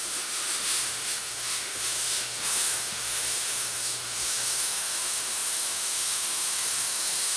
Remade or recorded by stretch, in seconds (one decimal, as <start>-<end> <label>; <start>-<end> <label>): 0.0-7.4 remade